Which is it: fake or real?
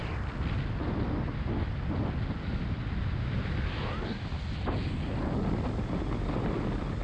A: real